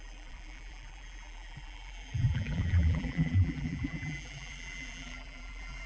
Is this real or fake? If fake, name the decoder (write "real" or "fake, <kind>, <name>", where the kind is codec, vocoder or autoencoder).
fake, vocoder, BigVGAN v2